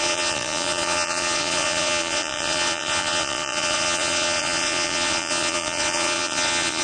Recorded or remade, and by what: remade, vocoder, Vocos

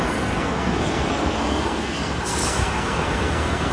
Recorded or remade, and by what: remade, codec, SNAC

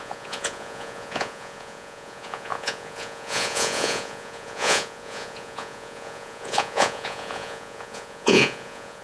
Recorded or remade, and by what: remade, vocoder, Vocos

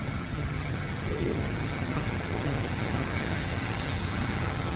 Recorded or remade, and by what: remade, vocoder, HiFi-GAN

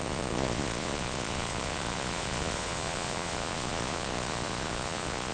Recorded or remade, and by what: remade, vocoder, Vocos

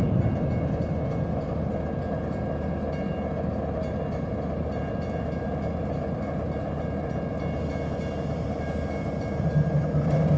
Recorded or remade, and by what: recorded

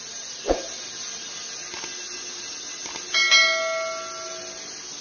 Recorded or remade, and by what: recorded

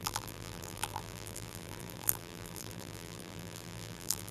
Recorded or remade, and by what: remade, vocoder, BigVGAN v2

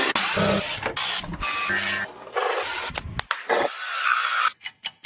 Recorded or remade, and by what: recorded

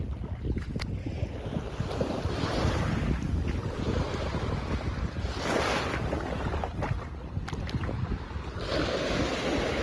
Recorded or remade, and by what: recorded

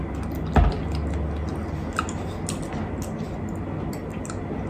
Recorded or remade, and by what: recorded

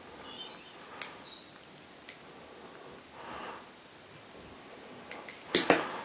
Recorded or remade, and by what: recorded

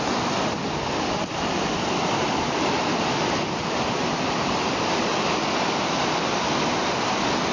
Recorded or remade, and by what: recorded